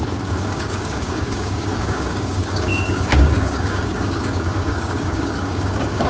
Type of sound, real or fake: fake